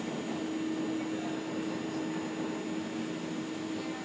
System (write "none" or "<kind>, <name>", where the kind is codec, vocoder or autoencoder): none